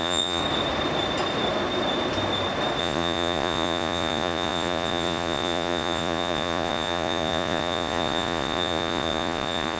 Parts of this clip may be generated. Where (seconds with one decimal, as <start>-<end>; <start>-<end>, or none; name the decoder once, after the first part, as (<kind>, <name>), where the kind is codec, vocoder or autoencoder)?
0.0-0.4 (vocoder, Vocos); 2.8-9.8